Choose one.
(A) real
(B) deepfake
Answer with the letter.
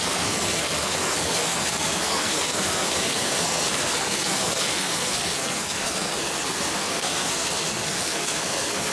B